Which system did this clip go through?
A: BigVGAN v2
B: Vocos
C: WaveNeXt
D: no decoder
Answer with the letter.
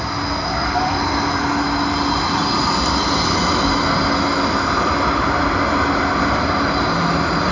D